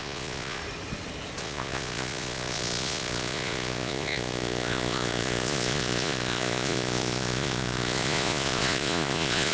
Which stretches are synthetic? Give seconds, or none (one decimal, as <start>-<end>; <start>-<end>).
0.0-0.6; 1.4-9.5